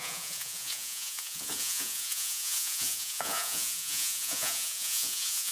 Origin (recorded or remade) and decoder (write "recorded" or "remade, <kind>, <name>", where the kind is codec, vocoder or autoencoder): remade, vocoder, Vocos